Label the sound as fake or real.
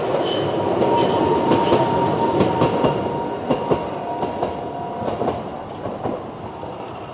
real